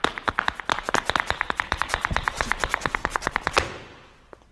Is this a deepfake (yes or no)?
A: no